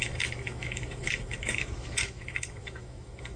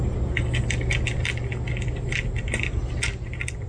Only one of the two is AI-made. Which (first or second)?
first